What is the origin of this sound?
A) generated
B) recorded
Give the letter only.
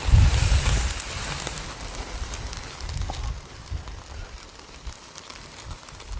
B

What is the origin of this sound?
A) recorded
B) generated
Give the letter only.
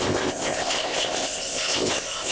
B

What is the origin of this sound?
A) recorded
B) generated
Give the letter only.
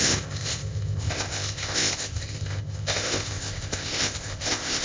B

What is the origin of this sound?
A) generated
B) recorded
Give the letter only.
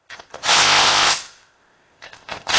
A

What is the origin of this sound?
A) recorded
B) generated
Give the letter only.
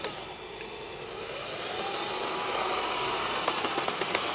A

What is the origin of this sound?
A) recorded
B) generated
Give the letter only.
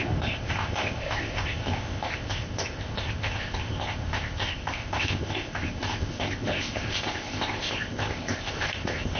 B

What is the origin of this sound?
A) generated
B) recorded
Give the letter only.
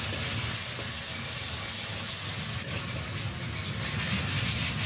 B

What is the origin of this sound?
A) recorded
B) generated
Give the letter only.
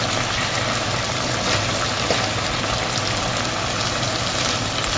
A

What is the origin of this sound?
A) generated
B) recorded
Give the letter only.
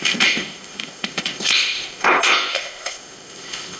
A